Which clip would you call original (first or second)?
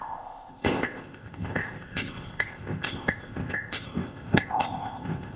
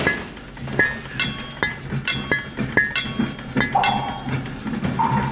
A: second